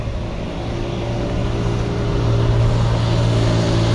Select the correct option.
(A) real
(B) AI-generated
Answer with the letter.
A